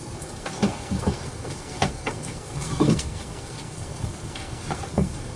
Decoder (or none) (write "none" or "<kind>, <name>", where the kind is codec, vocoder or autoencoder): codec, SNAC